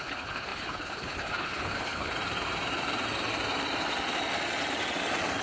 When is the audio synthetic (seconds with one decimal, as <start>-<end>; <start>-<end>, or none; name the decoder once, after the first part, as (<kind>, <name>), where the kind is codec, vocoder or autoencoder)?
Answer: 0.0-2.1 (codec, HILCodec)